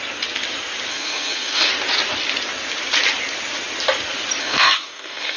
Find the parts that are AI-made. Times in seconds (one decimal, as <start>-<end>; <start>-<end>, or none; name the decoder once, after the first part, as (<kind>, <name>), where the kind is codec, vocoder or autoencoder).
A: 0.9-1.7 (codec, SNAC); 4.4-5.4